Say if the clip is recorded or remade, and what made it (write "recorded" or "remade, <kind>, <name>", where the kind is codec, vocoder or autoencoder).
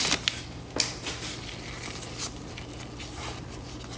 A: recorded